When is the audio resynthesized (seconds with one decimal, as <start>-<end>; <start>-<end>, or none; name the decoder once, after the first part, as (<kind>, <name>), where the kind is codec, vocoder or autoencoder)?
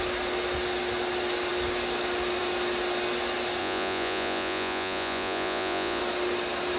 3.6-6.0 (vocoder, Vocos)